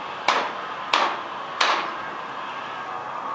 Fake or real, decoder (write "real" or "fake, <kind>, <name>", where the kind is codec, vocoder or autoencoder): real